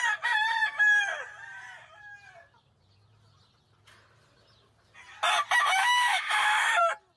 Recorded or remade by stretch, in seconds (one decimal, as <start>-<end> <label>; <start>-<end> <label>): 0.0-5.8 recorded; 5.8-6.8 remade; 6.8-7.2 recorded